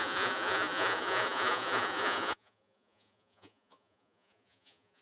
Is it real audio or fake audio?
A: fake